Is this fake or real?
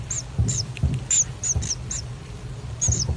real